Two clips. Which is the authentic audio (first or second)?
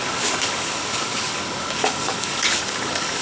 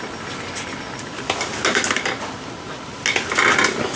second